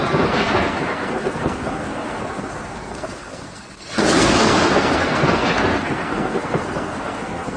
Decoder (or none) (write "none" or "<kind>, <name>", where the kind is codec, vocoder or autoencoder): codec, SNAC